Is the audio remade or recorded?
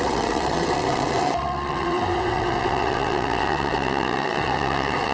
remade